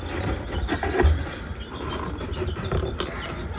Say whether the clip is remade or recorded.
recorded